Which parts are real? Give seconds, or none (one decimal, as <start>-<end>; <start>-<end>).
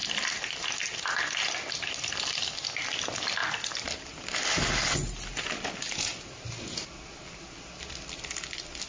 0.0-8.9